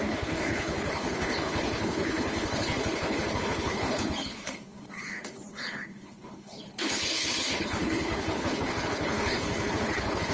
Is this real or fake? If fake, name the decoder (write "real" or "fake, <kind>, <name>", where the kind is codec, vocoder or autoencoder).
fake, codec, HILCodec